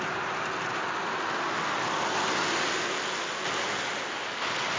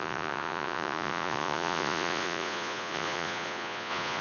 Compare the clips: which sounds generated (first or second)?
second